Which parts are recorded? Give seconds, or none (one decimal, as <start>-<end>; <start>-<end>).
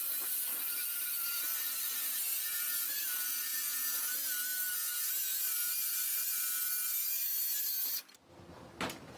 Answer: 0.0-9.2